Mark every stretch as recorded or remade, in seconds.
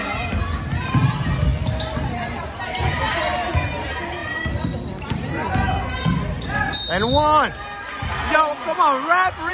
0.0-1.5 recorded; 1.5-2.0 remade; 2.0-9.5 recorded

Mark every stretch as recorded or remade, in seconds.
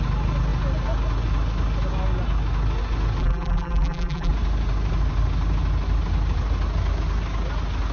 0.0-3.2 recorded; 3.2-4.3 remade; 4.3-7.9 recorded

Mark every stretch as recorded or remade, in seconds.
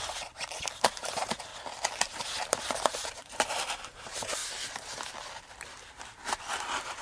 0.0-1.5 remade; 1.5-3.2 recorded; 3.2-4.4 remade; 4.4-5.1 recorded; 5.1-7.0 remade